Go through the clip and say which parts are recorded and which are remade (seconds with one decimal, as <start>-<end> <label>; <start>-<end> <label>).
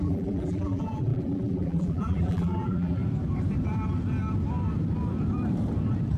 0.0-3.0 remade; 3.0-6.2 recorded